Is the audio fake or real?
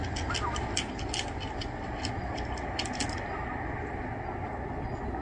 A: real